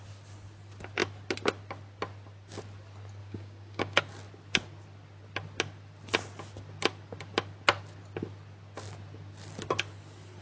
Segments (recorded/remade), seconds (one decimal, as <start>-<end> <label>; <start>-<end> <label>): 0.0-3.2 recorded; 3.2-4.0 remade; 4.0-10.4 recorded